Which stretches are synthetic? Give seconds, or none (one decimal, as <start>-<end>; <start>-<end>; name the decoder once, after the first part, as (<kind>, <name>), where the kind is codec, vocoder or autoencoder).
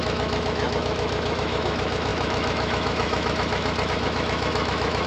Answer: 0.0-5.1 (autoencoder, DAC-VAE)